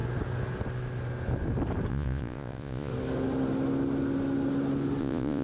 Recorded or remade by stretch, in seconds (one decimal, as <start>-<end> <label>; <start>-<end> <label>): 0.0-1.9 recorded; 1.9-2.9 remade; 2.9-5.0 recorded; 5.0-5.4 remade